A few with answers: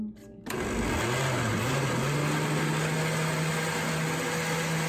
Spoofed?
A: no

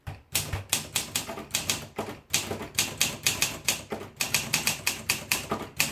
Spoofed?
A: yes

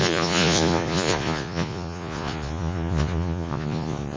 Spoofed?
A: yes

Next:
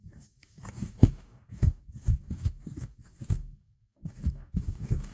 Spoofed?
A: yes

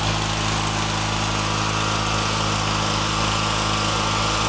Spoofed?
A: no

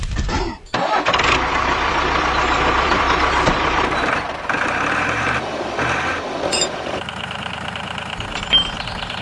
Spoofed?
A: yes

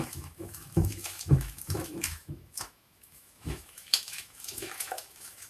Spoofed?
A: yes